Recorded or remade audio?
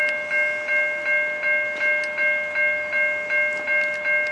recorded